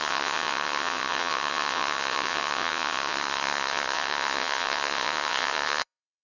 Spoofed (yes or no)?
yes